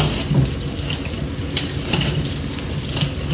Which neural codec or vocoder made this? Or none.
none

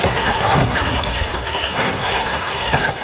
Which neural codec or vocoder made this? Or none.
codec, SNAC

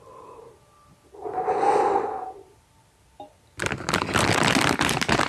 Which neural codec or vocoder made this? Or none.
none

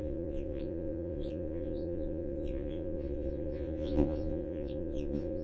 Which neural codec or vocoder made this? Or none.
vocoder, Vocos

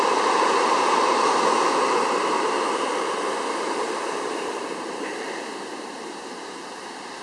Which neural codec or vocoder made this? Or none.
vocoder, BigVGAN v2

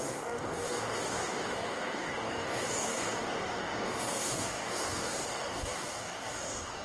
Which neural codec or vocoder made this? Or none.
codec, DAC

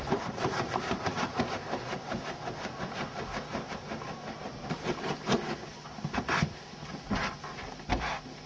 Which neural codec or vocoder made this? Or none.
none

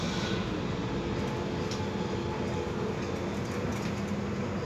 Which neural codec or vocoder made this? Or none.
none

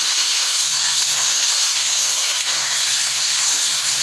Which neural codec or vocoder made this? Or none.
codec, SNAC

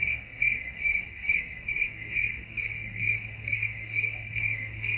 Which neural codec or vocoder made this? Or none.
codec, SNAC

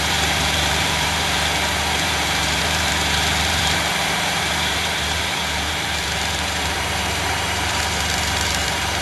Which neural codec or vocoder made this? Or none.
vocoder, BigVGAN v2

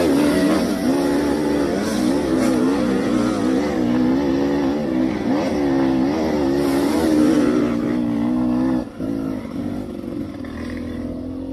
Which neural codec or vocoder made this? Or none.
none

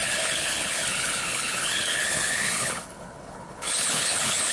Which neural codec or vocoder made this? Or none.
codec, HILCodec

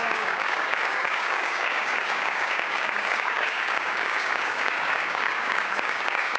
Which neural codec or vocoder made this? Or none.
codec, DAC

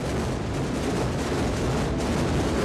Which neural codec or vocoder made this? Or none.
none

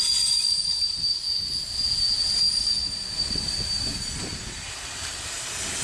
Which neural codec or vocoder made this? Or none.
none